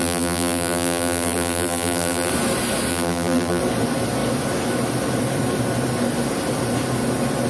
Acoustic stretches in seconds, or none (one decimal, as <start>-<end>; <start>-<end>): 2.3-2.9; 3.6-7.5